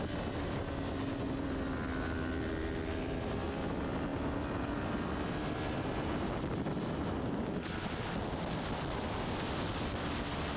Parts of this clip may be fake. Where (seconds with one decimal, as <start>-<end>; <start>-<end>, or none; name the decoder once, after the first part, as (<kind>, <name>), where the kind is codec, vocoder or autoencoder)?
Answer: none